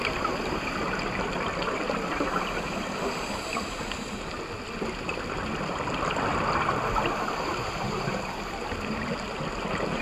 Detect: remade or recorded recorded